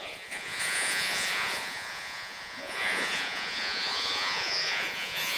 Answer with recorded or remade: remade